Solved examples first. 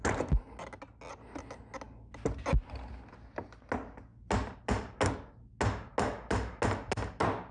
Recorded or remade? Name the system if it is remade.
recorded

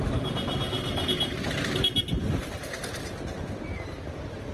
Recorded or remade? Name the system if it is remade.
recorded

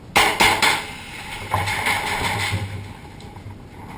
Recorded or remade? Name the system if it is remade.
recorded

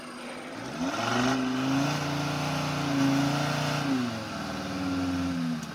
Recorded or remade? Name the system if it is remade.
recorded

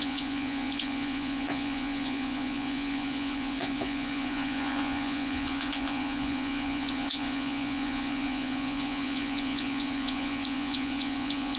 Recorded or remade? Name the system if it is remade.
remade, vocoder, Vocos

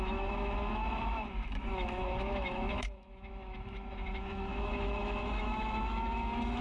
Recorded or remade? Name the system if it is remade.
remade, autoencoder, DAC-VAE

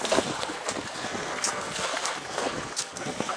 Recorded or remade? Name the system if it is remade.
remade, codec, SNAC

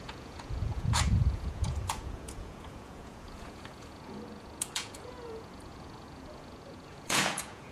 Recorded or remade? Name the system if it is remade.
remade, vocoder, Vocos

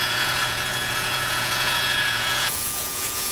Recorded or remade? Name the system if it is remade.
remade, vocoder, Vocos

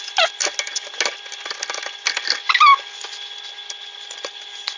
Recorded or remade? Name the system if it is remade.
recorded